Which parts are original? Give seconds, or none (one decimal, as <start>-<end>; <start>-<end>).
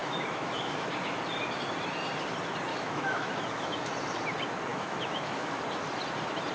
0.9-2.7; 3.9-4.7; 5.6-6.5